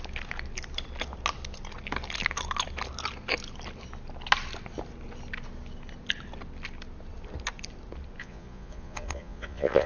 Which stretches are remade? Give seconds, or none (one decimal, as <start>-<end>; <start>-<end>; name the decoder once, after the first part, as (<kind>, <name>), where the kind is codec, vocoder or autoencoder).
8.2-9.9 (vocoder, Vocos)